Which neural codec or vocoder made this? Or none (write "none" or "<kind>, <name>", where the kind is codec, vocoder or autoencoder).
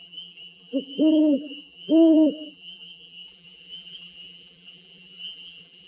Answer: vocoder, BigVGAN v2